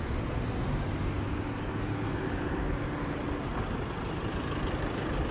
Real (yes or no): yes